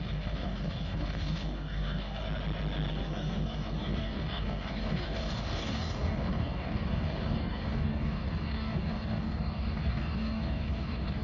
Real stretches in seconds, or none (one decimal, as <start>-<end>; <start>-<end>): 2.2-2.9